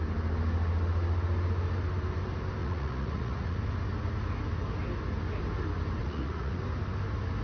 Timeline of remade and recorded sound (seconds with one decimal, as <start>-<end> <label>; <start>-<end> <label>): 0.0-2.6 recorded; 2.6-3.6 remade; 3.6-6.0 recorded; 6.0-6.6 remade; 6.6-7.4 recorded